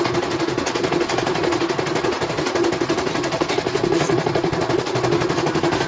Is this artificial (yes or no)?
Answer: no